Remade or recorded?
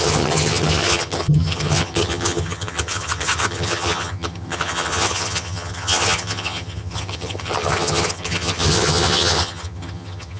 remade